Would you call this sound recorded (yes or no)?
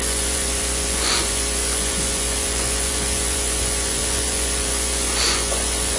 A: no